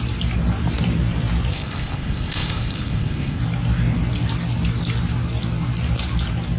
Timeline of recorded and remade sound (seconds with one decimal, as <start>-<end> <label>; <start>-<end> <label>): 0.0-1.5 recorded; 1.5-3.4 remade; 3.4-6.6 recorded